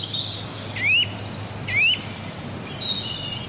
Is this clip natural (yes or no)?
yes